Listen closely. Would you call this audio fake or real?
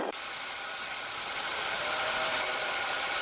fake